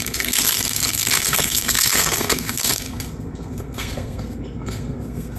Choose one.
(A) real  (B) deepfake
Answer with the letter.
B